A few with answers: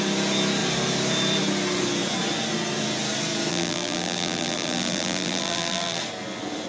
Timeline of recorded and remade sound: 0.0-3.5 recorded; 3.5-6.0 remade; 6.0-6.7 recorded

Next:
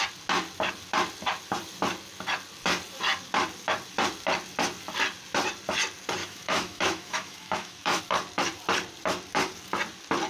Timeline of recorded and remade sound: 0.0-6.2 recorded; 6.2-8.0 remade; 8.0-10.3 recorded

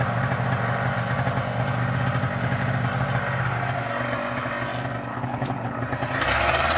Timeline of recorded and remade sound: 0.0-5.1 recorded; 5.1-5.8 remade; 5.8-6.8 recorded

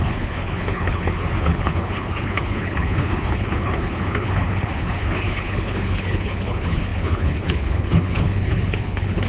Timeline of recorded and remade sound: 0.0-9.3 remade

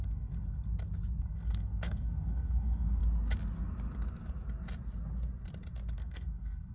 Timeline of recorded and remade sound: 0.0-0.7 remade; 0.7-1.2 recorded; 1.2-3.0 remade; 3.0-6.0 recorded; 6.0-6.7 remade

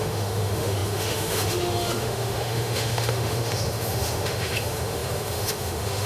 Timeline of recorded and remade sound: 0.0-6.1 remade

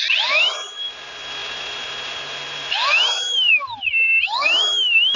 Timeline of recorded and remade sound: 0.0-1.4 recorded; 1.4-3.5 remade; 3.5-5.2 recorded

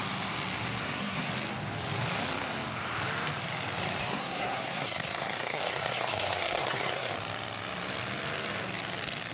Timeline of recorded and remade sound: 0.0-0.8 recorded; 0.8-1.3 remade; 1.3-4.0 recorded; 4.0-7.1 remade; 7.1-9.3 recorded